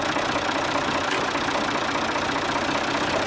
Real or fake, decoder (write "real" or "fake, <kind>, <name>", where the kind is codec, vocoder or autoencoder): real